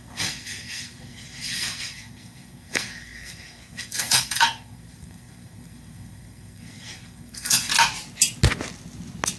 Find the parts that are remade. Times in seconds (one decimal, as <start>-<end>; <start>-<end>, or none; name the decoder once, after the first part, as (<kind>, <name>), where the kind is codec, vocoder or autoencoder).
0.0-7.7 (codec, SNAC)